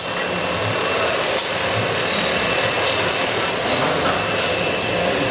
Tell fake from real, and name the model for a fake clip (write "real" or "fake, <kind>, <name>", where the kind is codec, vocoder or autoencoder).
real